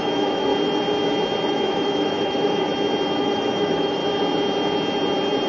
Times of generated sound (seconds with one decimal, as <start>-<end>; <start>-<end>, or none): 0.0-0.5; 1.5-2.7; 3.2-4.0